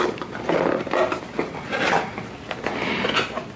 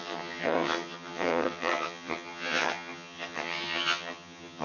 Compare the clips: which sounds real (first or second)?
first